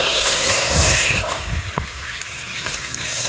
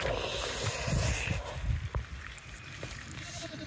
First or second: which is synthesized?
first